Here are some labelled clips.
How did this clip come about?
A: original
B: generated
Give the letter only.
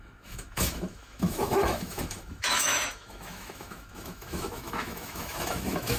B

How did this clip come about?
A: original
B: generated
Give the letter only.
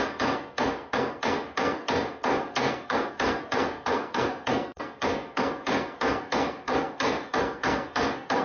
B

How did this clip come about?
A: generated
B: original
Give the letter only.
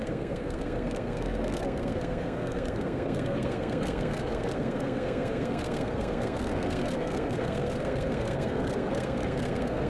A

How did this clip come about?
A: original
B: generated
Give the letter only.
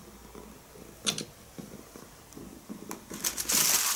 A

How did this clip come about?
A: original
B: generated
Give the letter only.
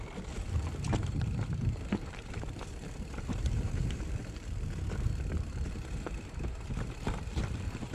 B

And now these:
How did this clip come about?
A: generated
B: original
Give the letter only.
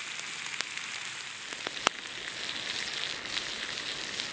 B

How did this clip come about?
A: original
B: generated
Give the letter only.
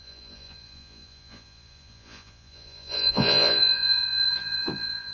B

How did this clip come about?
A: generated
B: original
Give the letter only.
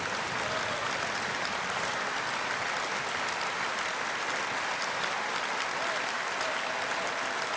B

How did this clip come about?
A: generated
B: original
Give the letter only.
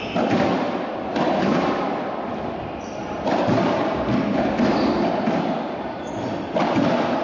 A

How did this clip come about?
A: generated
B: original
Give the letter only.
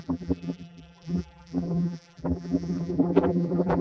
A